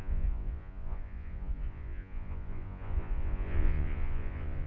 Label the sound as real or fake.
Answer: fake